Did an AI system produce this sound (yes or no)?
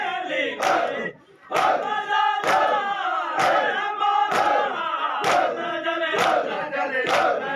no